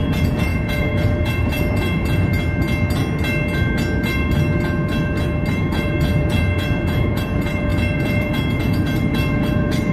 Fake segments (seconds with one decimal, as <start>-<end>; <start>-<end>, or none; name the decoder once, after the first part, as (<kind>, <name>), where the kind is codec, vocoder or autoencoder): 0.0-2.3 (vocoder, Vocos); 5.5-9.9